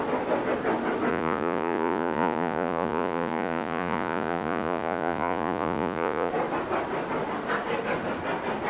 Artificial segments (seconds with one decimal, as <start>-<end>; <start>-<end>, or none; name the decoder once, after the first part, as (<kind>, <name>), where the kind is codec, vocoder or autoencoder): 1.1-6.3 (vocoder, Vocos)